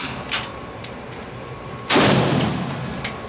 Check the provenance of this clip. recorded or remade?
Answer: remade